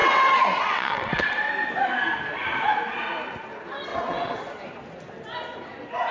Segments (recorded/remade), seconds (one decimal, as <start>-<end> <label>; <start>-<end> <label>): 0.0-1.5 remade; 1.5-3.9 recorded; 3.9-4.5 remade; 4.5-6.1 recorded